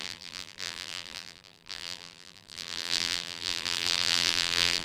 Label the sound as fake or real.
fake